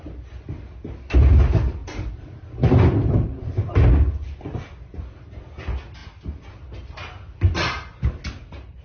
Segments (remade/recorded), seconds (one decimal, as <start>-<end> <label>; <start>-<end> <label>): 0.0-8.8 recorded